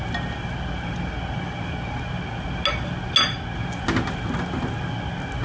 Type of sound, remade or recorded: recorded